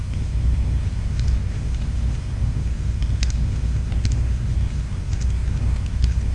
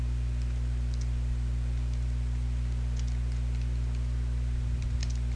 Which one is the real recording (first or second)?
second